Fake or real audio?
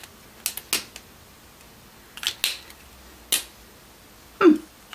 real